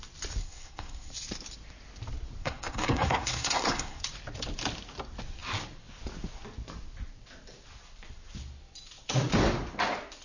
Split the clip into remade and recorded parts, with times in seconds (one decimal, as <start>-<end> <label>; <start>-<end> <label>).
0.0-0.4 recorded; 0.4-1.1 remade; 1.1-2.4 recorded; 2.4-4.0 remade; 4.0-10.2 recorded